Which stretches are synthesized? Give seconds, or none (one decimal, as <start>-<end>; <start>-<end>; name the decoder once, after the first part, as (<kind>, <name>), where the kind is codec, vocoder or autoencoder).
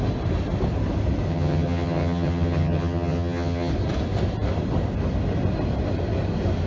1.3-3.7 (vocoder, HiFi-GAN)